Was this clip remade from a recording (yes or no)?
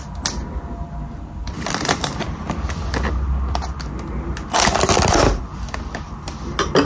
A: no